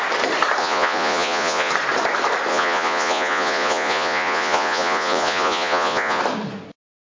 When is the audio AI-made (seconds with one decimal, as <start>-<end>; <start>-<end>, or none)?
0.6-1.7; 2.5-6.2